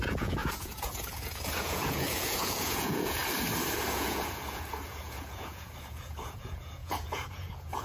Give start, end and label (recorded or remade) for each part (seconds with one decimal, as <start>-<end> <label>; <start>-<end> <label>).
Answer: 0.0-3.2 remade; 3.2-3.9 recorded; 3.9-7.8 remade